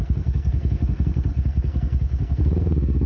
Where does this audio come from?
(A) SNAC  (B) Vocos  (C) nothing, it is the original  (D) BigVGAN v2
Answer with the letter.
A